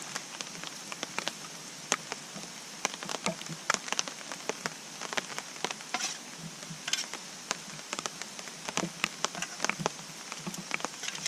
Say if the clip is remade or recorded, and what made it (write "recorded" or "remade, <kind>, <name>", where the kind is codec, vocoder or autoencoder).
remade, vocoder, BigVGAN v2